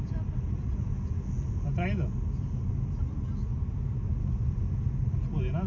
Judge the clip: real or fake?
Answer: real